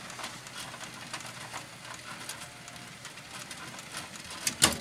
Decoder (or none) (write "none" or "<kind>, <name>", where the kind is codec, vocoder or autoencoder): none